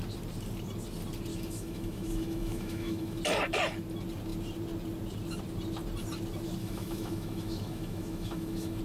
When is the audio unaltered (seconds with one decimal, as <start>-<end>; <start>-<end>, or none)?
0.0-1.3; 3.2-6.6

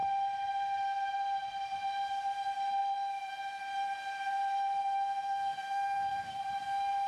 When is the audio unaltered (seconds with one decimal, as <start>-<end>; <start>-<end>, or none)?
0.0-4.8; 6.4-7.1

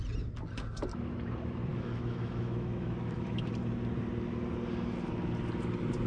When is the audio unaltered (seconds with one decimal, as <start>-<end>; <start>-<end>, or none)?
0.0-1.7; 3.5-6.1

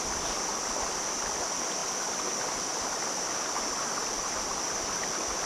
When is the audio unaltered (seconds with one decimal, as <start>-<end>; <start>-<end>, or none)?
0.0-5.5

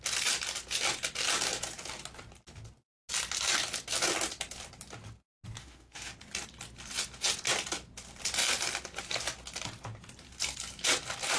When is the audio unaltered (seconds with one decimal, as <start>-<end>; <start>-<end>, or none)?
0.0-5.6; 6.1-11.4

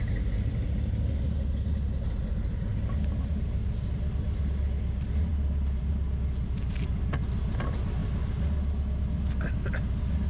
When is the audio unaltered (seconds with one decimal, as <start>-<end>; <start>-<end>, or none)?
0.0-10.3

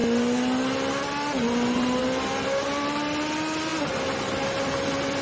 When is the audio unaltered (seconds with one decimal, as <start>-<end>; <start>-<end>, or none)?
0.0-5.2